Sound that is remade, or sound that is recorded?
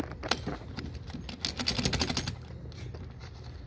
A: recorded